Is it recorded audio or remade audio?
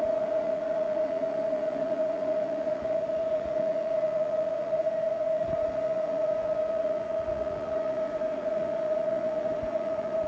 remade